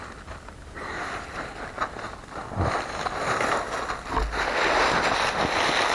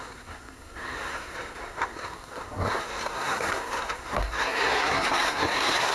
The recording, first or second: first